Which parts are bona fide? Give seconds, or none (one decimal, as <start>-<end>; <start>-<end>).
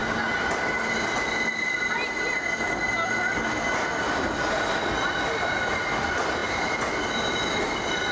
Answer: 0.0-8.1